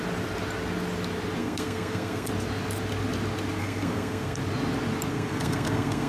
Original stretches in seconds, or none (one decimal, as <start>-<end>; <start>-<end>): 0.0-1.4; 2.3-3.6; 4.4-5.1